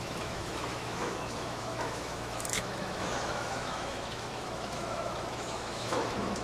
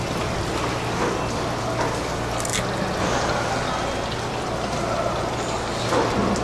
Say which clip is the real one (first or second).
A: second